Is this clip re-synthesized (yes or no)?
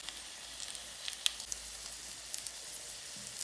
no